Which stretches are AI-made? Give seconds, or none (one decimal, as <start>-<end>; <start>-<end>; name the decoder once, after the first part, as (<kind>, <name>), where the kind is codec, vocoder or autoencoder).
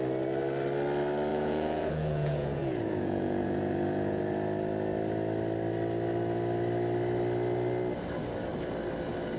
1.3-4.2 (vocoder, Vocos)